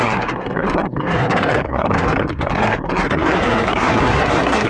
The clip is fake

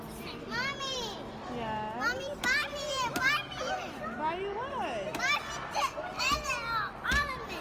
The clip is real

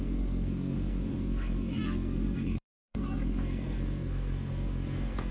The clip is fake